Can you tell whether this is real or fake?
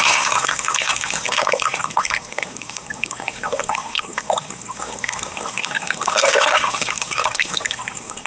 fake